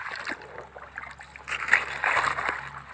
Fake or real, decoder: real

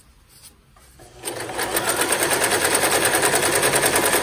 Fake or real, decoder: real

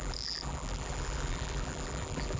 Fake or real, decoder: fake, vocoder, BigVGAN v2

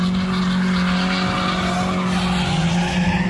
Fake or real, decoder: real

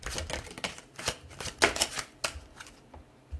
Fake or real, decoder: real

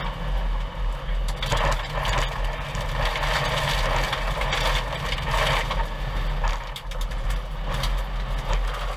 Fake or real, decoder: real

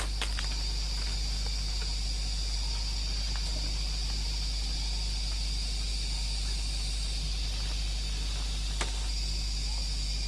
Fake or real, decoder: real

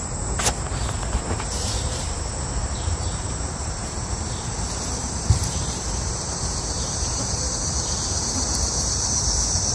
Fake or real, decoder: fake, vocoder, BigVGAN v2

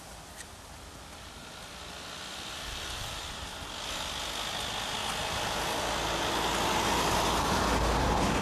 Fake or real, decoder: real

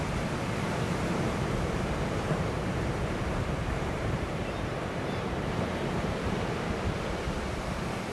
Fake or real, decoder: fake, vocoder, BigVGAN v2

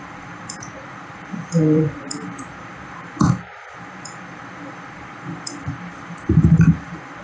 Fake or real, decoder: fake, vocoder, BigVGAN v2